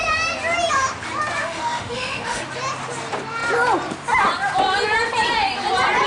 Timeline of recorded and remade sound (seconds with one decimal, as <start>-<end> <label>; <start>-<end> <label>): 0.0-1.4 recorded; 1.4-2.4 remade; 2.4-6.1 recorded